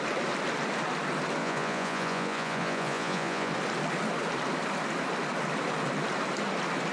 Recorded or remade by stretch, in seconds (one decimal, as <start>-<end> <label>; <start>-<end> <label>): 0.0-1.4 recorded; 1.4-3.5 remade; 3.5-6.9 recorded